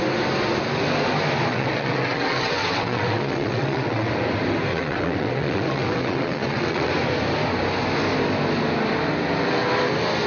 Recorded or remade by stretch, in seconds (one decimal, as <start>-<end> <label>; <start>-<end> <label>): 0.0-1.5 recorded; 1.5-4.1 remade; 4.1-4.7 recorded; 4.7-6.9 remade; 6.9-10.3 recorded